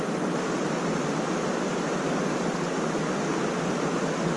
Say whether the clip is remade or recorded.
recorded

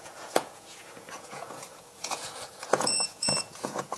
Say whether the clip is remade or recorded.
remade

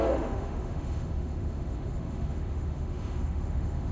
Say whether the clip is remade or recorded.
remade